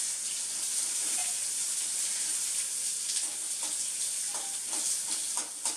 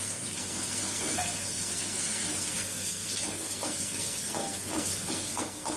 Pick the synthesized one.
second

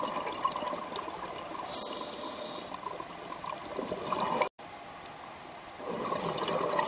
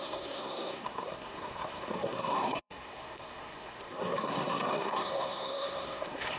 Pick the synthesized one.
second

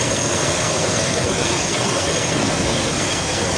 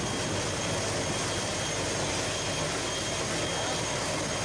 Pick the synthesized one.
first